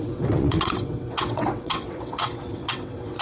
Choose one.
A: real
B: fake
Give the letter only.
B